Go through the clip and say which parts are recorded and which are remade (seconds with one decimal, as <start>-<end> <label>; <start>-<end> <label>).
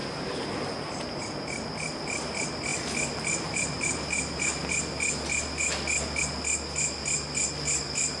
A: 0.0-8.2 recorded